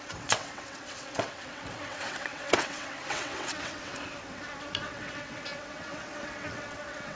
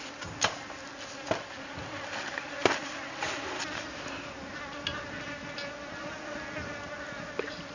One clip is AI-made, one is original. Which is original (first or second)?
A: second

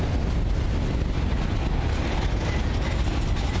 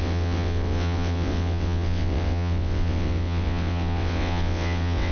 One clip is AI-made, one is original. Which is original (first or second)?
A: first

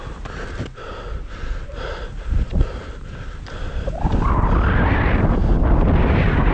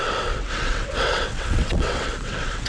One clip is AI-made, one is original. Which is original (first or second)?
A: first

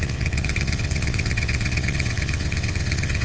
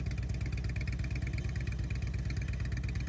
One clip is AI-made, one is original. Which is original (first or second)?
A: second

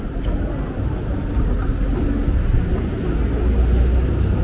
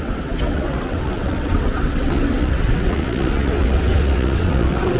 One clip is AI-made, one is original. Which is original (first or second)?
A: first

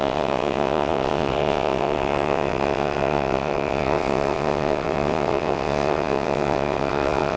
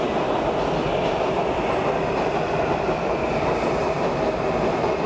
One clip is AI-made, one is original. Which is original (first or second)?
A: second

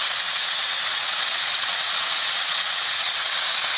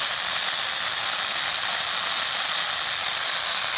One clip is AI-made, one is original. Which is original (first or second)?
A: second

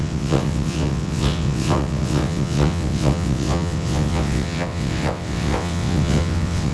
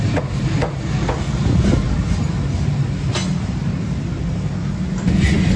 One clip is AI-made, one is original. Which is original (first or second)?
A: second